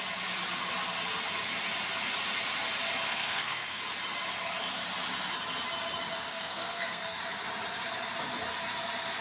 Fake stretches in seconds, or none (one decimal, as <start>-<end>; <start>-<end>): 3.1-3.8; 6.3-7.2